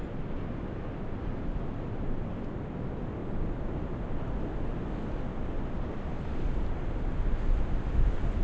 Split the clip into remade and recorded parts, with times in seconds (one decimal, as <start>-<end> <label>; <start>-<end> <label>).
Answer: 0.0-8.4 recorded